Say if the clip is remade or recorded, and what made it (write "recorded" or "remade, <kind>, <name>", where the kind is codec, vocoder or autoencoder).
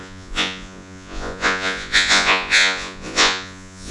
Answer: remade, vocoder, Vocos